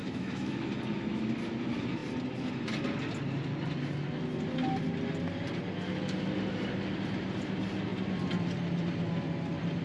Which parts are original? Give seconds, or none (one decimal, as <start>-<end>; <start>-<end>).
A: 0.7-9.8